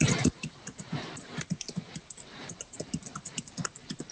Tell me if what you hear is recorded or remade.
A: remade